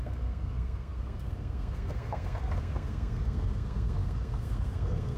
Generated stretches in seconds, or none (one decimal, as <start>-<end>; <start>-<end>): 0.0-5.2